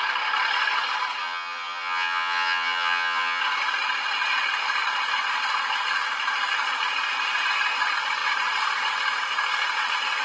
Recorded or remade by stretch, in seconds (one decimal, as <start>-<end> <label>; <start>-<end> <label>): 0.0-1.2 recorded; 1.2-3.4 remade; 3.4-10.2 recorded